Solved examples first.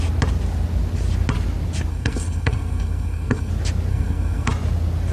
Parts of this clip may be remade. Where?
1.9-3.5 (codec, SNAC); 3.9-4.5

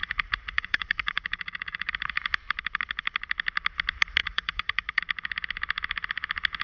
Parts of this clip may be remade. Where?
0.0-1.9 (vocoder, Vocos); 4.2-5.0

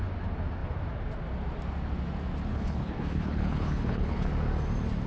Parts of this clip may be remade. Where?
2.5-4.3 (codec, HILCodec)

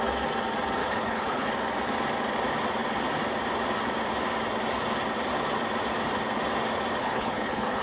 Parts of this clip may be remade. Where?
0.8-1.5 (codec, HILCodec); 7.0-7.8

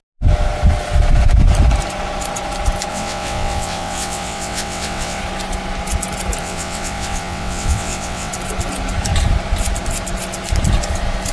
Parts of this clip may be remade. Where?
2.9-5.2 (vocoder, WaveNeXt); 6.4-8.3

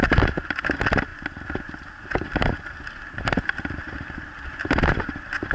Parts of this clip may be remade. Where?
none

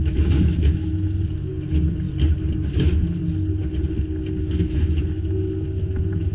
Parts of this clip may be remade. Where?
0.0-1.5 (autoencoder, DAC-VAE); 2.7-3.2; 4.4-6.3

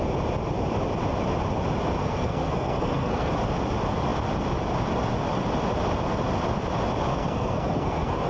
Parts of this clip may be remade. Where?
2.0-3.3 (codec, SNAC); 7.1-8.3